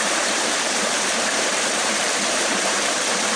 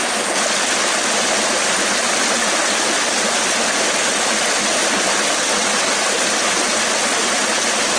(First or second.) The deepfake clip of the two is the first